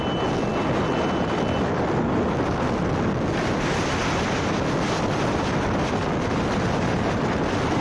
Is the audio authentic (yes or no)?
yes